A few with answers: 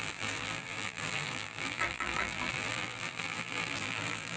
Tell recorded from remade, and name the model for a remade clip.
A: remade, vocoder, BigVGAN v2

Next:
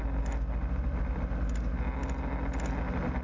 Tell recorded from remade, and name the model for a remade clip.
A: recorded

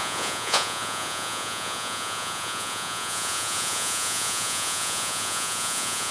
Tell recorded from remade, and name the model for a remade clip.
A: remade, vocoder, Vocos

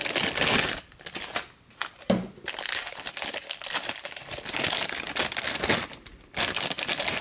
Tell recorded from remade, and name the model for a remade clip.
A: recorded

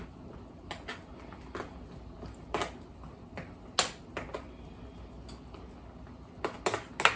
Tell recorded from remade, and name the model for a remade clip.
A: recorded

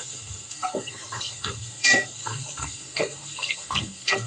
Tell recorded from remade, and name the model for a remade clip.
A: remade, codec, SNAC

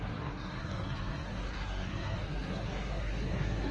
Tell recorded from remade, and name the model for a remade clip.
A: remade, codec, SNAC